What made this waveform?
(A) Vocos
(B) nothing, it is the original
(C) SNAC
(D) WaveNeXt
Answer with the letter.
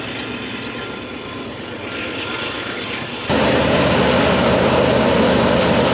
B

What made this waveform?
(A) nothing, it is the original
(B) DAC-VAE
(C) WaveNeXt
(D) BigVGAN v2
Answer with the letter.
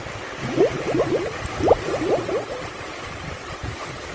A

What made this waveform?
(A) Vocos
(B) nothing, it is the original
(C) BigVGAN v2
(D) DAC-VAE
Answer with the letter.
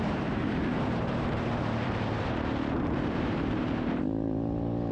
C